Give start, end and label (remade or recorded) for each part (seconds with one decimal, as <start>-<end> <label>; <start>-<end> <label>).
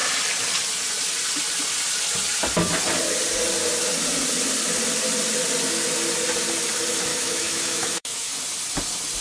0.0-7.1 recorded; 7.1-8.3 remade; 8.3-9.2 recorded